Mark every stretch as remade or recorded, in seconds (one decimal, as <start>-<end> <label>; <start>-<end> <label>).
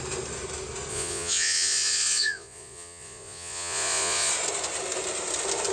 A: 0.0-0.9 recorded; 0.9-4.3 remade; 4.3-5.7 recorded